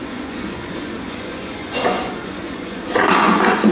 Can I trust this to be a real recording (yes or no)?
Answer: no